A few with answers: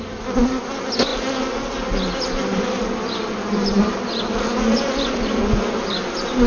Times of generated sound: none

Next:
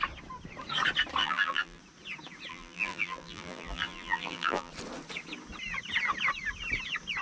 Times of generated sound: 1.2-1.8 (vocoder, BigVGAN v2); 2.5-4.7

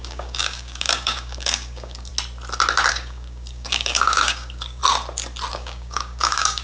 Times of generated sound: 0.0-2.1 (codec, DAC); 2.9-4.8; 5.5-6.6